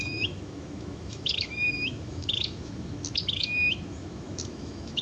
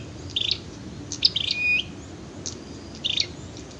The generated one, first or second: first